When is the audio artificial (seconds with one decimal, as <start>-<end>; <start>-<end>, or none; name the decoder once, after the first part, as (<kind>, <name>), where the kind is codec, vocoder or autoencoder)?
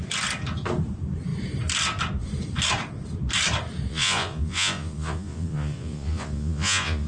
3.9-7.1 (vocoder, Vocos)